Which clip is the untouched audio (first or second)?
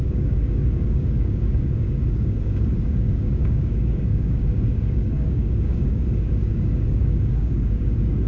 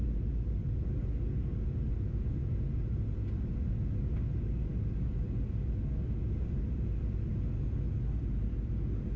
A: second